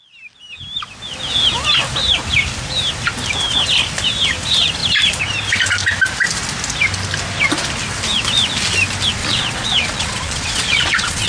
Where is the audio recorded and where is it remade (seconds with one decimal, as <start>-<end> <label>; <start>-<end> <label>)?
0.0-9.2 recorded; 9.2-11.3 remade